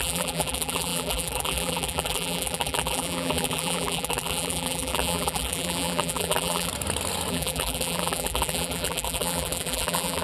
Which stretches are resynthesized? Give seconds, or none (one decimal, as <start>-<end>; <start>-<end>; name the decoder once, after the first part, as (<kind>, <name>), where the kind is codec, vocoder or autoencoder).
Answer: 0.0-6.7 (vocoder, BigVGAN v2); 7.3-10.2